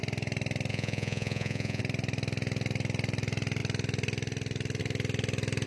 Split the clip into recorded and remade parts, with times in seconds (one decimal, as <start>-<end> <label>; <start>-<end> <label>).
0.0-0.7 recorded; 0.7-1.8 remade; 1.8-5.7 recorded